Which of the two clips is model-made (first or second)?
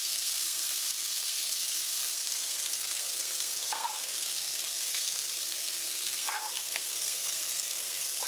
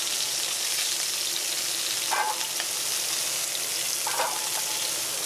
first